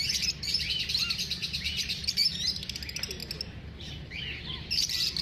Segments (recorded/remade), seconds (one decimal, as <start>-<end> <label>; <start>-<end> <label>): 0.0-1.4 recorded; 1.4-2.5 remade; 2.5-5.2 recorded

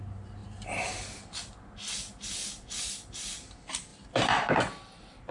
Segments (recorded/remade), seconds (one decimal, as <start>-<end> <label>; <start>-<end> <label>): 0.0-3.9 recorded; 3.9-4.6 remade; 4.6-5.3 recorded

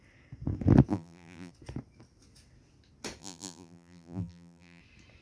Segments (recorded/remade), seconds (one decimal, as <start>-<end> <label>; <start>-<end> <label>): 0.0-0.9 recorded; 0.9-1.5 remade; 1.5-3.2 recorded; 3.2-4.8 remade; 4.8-5.2 recorded

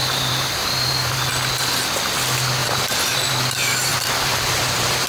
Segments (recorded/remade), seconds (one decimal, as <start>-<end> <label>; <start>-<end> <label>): 0.0-1.3 remade; 1.3-2.6 recorded; 2.6-3.3 remade; 3.3-3.9 recorded; 3.9-5.1 remade

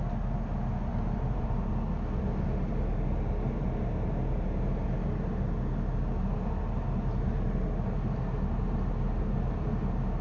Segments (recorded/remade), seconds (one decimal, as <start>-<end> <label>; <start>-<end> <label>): 0.0-0.9 recorded; 0.9-1.7 remade; 1.7-10.2 recorded

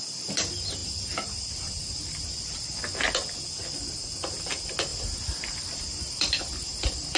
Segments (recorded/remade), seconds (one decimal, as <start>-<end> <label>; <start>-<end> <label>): 0.0-0.8 recorded; 0.8-2.8 remade; 2.8-4.9 recorded; 4.9-7.2 remade